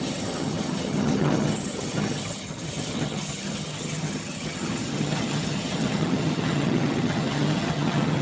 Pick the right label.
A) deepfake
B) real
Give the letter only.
A